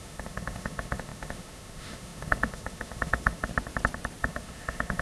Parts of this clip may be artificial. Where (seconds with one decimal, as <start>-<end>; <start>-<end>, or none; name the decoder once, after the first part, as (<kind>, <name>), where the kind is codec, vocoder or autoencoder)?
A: 0.0-3.5 (autoencoder, DAC-VAE); 4.2-5.0